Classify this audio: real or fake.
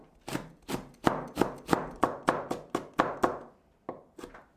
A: real